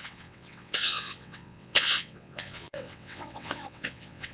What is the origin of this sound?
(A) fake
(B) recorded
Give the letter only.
A